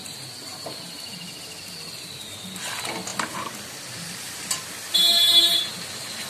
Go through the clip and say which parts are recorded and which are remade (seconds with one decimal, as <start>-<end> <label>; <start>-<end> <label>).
0.0-6.3 recorded